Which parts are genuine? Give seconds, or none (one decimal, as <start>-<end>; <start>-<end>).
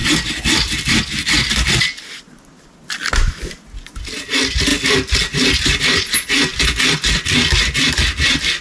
0.0-8.6